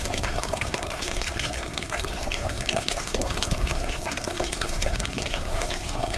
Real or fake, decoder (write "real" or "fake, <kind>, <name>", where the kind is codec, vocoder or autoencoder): fake, codec, SNAC